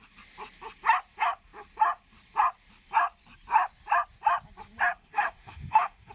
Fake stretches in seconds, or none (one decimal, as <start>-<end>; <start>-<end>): 5.0-6.1